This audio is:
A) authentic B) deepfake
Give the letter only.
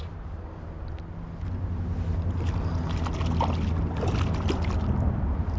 A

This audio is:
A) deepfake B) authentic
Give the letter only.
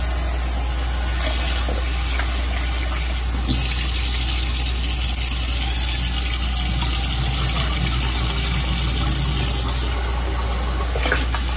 B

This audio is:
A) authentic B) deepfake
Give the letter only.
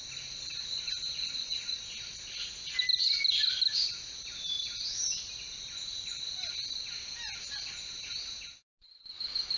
A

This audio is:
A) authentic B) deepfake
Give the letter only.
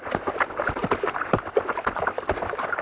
A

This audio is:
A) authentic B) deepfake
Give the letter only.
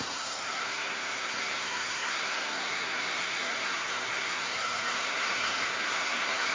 B